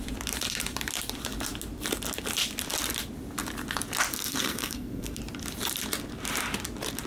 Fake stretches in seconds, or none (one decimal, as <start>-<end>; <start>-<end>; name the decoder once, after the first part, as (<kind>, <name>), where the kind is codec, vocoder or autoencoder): 4.1-5.2 (codec, SNAC)